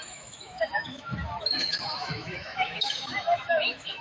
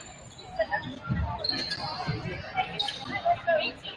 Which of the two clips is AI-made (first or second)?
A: first